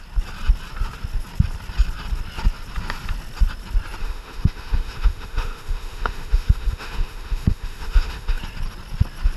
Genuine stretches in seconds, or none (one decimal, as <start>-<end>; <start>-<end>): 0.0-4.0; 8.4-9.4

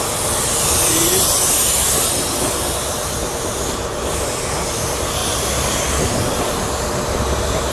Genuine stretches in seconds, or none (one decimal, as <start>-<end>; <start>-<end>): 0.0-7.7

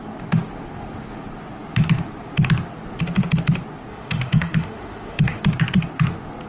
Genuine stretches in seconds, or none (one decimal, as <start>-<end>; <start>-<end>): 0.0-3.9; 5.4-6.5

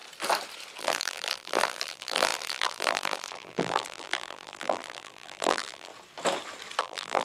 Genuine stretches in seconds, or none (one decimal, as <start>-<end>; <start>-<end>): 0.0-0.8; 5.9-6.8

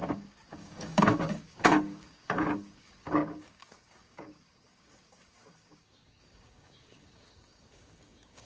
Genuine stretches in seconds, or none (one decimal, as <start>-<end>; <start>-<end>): none